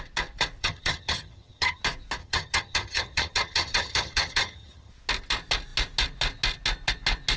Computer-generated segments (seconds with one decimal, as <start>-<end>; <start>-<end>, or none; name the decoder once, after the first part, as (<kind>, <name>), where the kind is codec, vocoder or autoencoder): 0.6-1.8 (vocoder, HiFi-GAN); 2.2-4.9